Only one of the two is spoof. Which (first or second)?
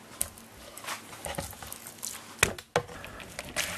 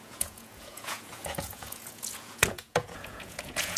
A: second